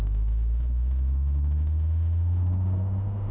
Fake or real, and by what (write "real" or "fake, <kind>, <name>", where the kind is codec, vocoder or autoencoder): fake, autoencoder, DAC-VAE